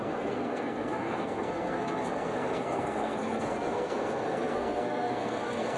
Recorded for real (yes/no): no